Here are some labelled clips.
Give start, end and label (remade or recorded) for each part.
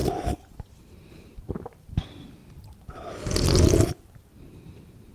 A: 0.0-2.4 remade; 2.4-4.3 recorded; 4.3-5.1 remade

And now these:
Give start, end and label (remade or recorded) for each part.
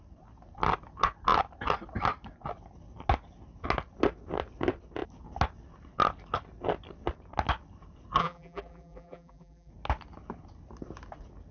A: 0.0-8.2 recorded; 8.2-9.7 remade; 9.7-11.5 recorded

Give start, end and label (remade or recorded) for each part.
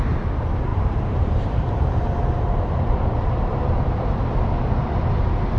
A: 0.0-0.7 recorded; 0.7-4.1 remade; 4.1-5.6 recorded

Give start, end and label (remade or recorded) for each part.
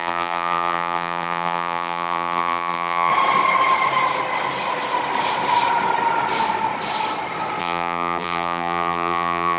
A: 0.0-3.1 remade; 3.1-7.6 recorded; 7.6-9.6 remade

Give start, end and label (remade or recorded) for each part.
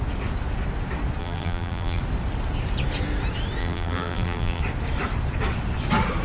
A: 0.0-1.2 recorded; 1.2-2.0 remade; 2.0-3.6 recorded; 3.6-4.6 remade; 4.6-6.2 recorded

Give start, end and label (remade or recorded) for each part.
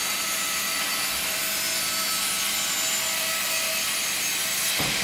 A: 0.0-1.4 remade; 1.4-4.4 recorded; 4.4-5.0 remade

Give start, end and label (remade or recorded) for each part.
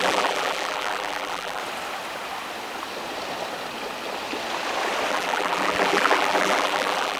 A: 0.0-1.6 remade; 1.6-5.1 recorded; 5.1-7.2 remade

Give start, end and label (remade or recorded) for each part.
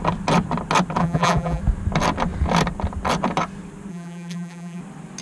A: 0.0-1.0 recorded; 1.0-1.6 remade; 1.6-3.9 recorded; 3.9-4.8 remade; 4.8-5.2 recorded